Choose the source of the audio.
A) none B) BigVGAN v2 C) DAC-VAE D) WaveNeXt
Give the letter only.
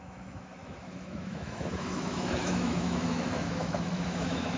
C